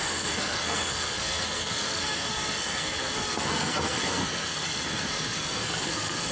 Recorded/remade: remade